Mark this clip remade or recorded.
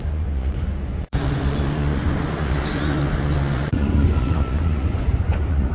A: remade